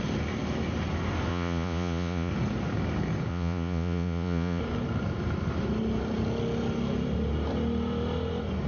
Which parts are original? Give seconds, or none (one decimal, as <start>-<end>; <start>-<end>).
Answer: 0.0-1.3; 2.3-3.3; 4.6-8.7